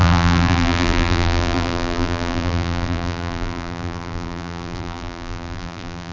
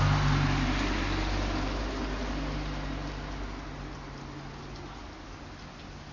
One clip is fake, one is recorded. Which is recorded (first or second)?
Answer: second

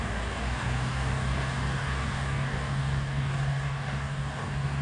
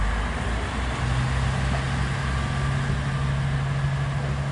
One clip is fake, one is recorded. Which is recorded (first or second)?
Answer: second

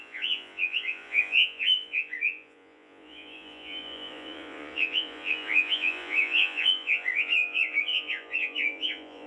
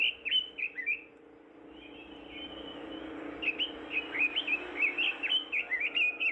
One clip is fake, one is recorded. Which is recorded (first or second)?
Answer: second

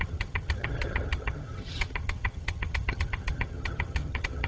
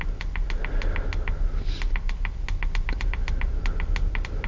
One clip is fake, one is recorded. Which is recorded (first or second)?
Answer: second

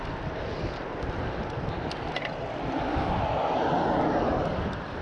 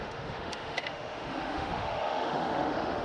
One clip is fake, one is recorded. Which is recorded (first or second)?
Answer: first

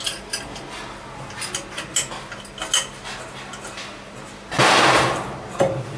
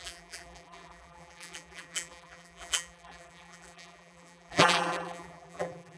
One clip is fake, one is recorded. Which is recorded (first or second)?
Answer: first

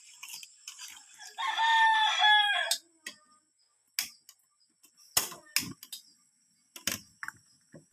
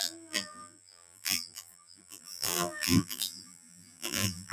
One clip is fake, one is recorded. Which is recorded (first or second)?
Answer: first